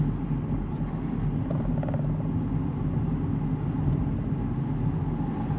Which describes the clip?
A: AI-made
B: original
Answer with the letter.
B